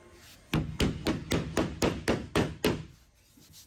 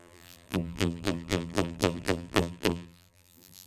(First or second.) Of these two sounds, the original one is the first